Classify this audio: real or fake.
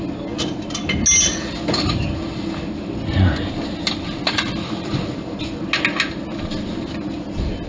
real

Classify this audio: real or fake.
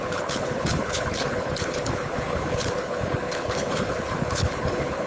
fake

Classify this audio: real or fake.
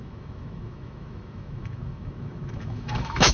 fake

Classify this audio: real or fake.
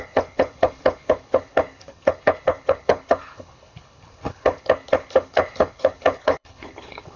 fake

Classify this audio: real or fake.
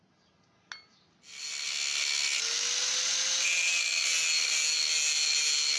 real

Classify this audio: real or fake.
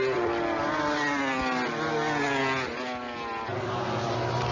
real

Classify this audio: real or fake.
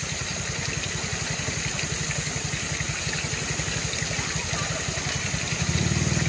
real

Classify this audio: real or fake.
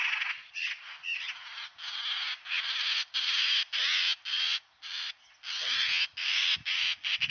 real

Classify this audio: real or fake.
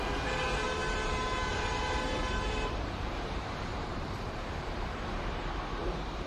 fake